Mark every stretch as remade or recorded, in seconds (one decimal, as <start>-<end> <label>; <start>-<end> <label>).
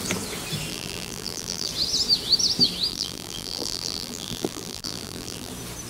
0.0-0.7 recorded; 0.7-1.7 remade; 1.7-2.9 recorded; 2.9-5.5 remade; 5.5-5.9 recorded